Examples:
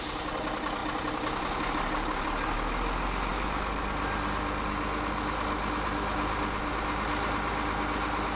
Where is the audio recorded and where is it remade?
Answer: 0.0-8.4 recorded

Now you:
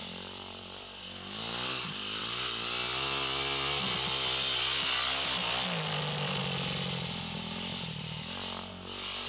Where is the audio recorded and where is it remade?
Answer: 0.0-1.0 remade; 1.0-9.3 recorded